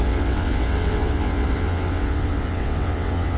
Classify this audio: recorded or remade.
remade